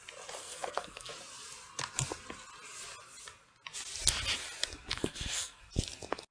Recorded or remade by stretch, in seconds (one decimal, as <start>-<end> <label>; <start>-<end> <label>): 0.0-0.4 recorded; 0.4-1.1 remade; 1.1-4.9 recorded; 4.9-5.6 remade; 5.6-6.3 recorded